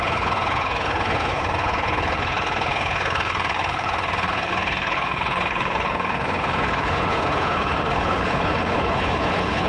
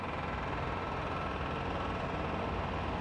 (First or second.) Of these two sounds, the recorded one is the second